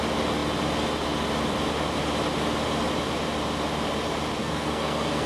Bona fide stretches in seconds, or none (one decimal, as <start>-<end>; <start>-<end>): 0.0-4.4